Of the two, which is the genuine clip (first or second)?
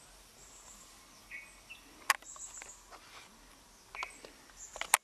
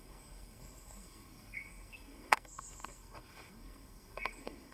first